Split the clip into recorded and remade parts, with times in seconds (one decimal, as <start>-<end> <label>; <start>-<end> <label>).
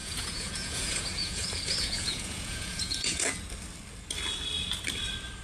0.0-3.2 remade; 3.2-5.4 recorded